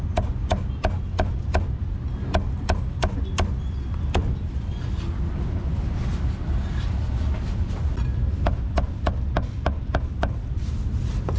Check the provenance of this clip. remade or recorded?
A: recorded